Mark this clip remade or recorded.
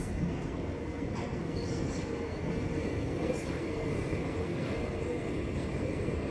remade